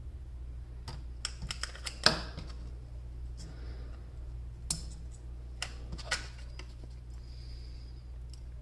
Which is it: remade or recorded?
recorded